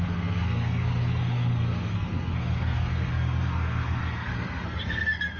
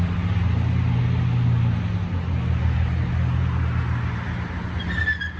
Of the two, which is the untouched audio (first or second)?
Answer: second